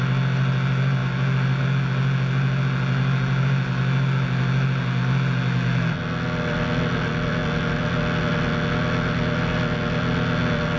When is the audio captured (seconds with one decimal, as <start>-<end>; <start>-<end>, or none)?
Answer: 0.0-10.8